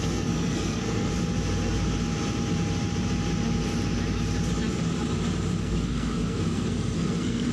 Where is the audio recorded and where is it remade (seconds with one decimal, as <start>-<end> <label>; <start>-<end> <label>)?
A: 0.0-1.1 remade; 1.1-5.6 recorded; 5.6-7.5 remade